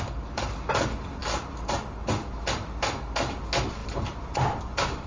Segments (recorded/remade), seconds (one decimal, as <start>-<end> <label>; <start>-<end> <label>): 0.0-5.1 recorded